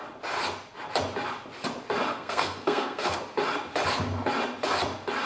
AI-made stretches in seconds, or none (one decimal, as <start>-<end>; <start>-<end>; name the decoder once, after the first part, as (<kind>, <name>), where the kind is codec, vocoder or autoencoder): 2.1-3.2 (codec, SNAC)

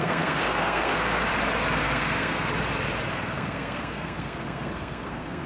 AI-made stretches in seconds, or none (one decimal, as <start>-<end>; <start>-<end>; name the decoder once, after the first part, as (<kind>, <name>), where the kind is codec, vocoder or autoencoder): 0.0-1.3 (codec, SNAC); 1.8-2.5; 3.1-5.5

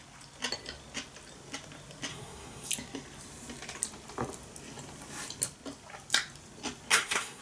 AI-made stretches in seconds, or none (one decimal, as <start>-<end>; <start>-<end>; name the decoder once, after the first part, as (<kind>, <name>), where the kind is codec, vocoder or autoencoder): 2.1-2.7 (codec, SNAC); 6.9-7.4

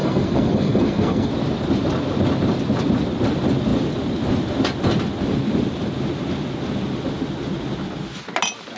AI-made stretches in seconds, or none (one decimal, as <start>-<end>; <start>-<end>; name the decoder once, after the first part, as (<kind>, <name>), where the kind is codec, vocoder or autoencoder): 0.0-1.3 (codec, SNAC)

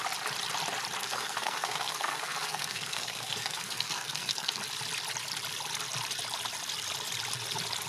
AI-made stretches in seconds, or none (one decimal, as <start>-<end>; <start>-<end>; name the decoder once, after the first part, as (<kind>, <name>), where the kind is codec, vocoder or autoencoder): 1.0-4.6 (codec, SNAC)

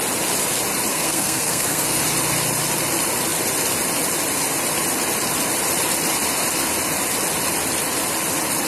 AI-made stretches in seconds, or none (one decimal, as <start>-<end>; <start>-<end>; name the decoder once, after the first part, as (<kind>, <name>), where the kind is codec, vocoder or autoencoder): 0.9-2.0 (codec, SNAC)

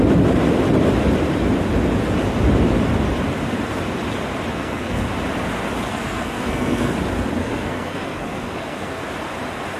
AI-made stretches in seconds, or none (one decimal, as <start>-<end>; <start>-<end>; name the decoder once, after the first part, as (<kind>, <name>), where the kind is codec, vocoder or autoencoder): 4.5-5.0 (codec, SNAC); 5.9-6.9; 7.4-9.0

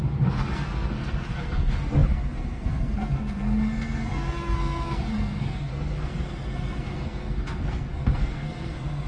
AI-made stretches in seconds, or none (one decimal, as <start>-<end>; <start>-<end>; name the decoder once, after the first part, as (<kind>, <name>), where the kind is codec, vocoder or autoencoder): 0.0-9.1 (codec, SNAC)